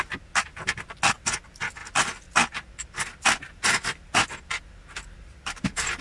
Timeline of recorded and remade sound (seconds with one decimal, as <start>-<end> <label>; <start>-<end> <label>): 0.0-6.0 recorded